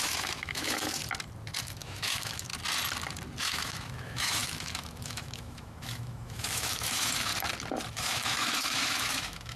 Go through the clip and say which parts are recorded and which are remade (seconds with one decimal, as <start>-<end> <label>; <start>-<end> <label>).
0.0-1.0 remade; 1.0-1.6 recorded; 1.6-2.5 remade; 2.5-3.4 recorded; 3.4-7.3 remade; 7.3-7.9 recorded; 7.9-9.6 remade